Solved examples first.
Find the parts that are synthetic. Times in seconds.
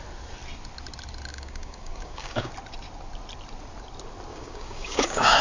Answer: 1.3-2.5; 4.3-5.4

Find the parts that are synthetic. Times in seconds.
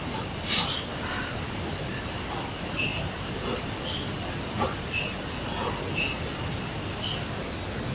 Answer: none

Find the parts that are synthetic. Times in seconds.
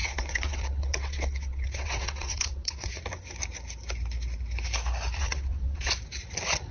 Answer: 0.0-3.0; 5.2-5.9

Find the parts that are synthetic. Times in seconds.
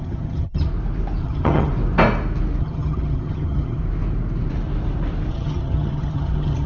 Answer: 0.0-0.7; 1.2-1.7; 2.6-3.8; 5.3-6.7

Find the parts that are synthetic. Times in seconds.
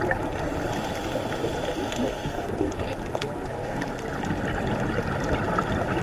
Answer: 2.1-2.7; 3.2-3.8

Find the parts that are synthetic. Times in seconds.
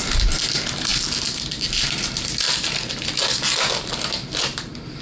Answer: none